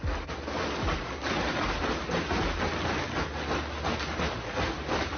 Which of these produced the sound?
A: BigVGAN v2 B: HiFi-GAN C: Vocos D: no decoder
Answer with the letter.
D